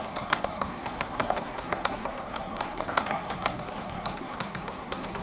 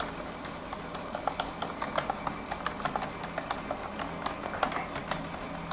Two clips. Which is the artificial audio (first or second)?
first